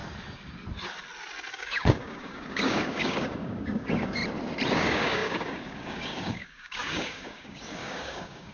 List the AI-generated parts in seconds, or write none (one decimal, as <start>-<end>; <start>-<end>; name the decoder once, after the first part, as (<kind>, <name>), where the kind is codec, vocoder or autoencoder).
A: 1.5-4.2 (codec, DAC); 4.7-8.5